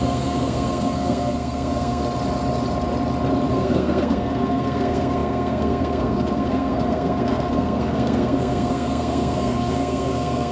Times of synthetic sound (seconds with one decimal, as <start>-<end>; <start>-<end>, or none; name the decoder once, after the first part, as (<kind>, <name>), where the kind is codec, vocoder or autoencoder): 0.0-2.0 (codec, SNAC); 3.5-10.5